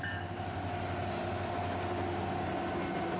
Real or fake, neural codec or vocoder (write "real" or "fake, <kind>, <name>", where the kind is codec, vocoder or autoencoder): real